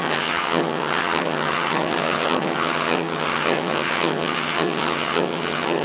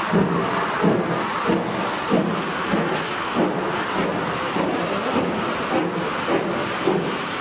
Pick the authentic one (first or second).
second